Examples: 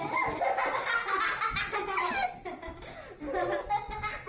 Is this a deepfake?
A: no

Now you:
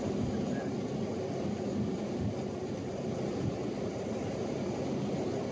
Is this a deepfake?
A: no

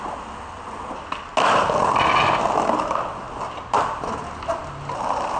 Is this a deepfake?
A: no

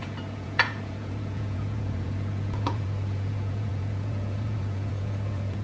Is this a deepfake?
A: yes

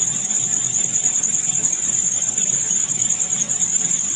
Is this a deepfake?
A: no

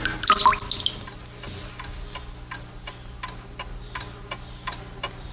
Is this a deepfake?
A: no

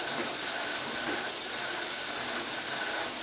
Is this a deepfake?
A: no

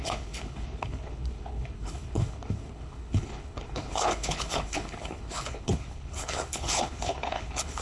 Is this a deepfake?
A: yes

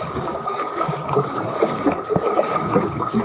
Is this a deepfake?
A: yes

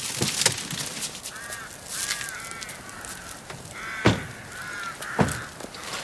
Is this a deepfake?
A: no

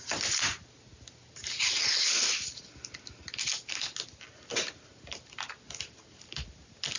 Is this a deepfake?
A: no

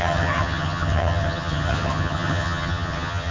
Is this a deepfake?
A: yes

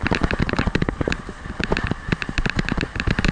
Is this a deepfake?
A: yes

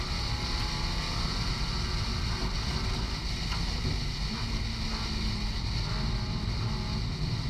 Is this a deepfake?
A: no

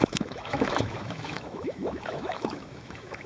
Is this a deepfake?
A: yes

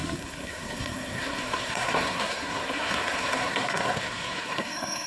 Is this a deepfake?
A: yes